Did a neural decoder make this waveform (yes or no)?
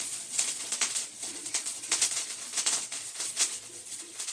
yes